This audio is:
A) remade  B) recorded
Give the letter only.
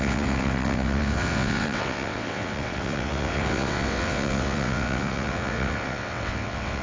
A